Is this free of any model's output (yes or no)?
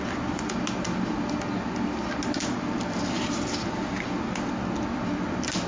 yes